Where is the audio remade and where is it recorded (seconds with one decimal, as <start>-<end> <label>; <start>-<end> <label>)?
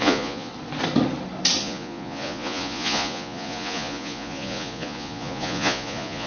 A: 0.0-0.5 remade; 0.5-1.6 recorded; 1.6-6.3 remade